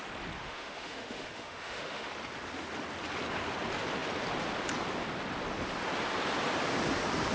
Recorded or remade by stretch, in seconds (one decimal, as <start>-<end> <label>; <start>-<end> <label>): 0.0-0.4 recorded; 0.4-2.1 remade; 2.1-7.3 recorded